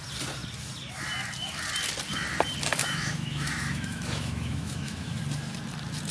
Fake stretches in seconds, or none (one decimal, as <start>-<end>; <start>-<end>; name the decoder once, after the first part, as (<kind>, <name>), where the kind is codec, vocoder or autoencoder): 2.8-5.2 (autoencoder, DAC-VAE)